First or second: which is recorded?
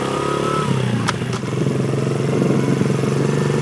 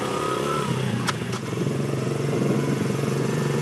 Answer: first